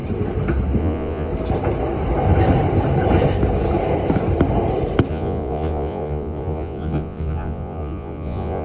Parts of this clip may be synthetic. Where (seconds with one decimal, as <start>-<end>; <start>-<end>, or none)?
0.8-1.3; 5.1-8.6